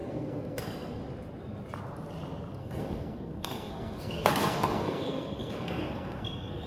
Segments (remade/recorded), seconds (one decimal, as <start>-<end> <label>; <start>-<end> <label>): 0.0-1.0 remade; 1.0-2.6 recorded; 2.6-6.7 remade